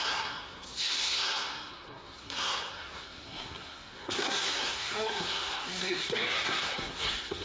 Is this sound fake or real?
fake